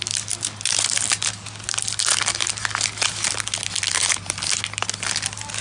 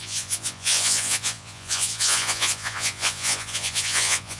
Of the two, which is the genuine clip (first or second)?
first